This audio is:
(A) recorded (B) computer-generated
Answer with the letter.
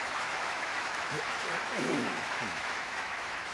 B